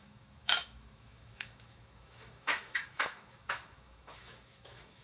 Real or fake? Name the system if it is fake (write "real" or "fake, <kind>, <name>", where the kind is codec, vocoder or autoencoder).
fake, autoencoder, DAC-VAE